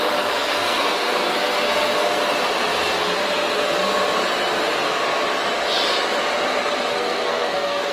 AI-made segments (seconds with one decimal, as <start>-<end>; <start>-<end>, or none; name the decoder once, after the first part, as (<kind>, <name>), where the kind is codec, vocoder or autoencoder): 0.0-2.2 (codec, SNAC); 6.9-7.9